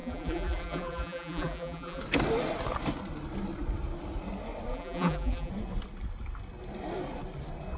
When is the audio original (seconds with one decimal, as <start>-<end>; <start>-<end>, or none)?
2.0-4.7; 5.5-7.8